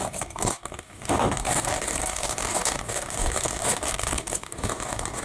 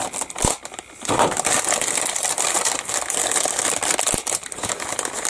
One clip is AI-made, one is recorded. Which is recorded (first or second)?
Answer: second